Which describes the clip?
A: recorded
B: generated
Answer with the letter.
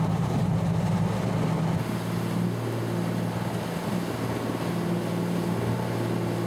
A